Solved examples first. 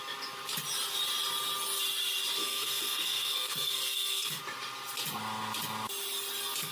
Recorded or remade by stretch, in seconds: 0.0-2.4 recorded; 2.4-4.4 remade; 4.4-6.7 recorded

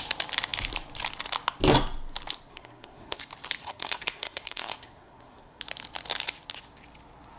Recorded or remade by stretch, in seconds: 0.0-2.5 recorded; 2.5-3.2 remade; 3.2-3.6 recorded; 3.6-5.6 remade; 5.6-7.4 recorded

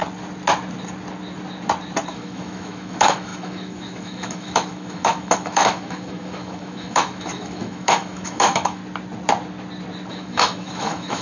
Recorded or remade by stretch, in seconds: 0.0-2.1 recorded; 2.1-8.8 remade; 8.8-10.1 recorded; 10.1-11.2 remade

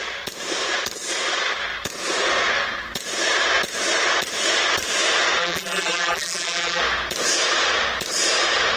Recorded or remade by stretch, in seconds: 0.0-5.4 recorded; 5.4-6.8 remade; 6.8-8.8 recorded

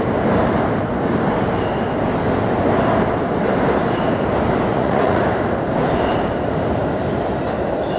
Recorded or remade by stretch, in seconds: 0.0-4.7 recorded; 4.7-5.2 remade; 5.2-8.0 recorded

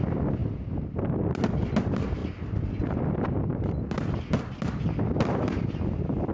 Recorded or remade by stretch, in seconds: 0.0-6.3 recorded

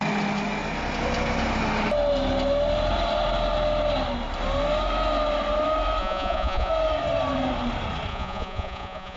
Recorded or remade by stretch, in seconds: 0.0-6.0 recorded; 6.0-6.7 remade; 6.7-8.1 recorded; 8.1-9.2 remade

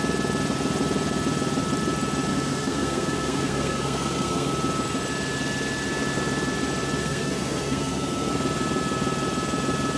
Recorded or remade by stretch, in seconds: 0.0-2.3 recorded; 2.3-4.5 remade; 4.5-7.0 recorded; 7.0-8.3 remade; 8.3-10.0 recorded